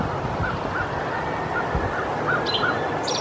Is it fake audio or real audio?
real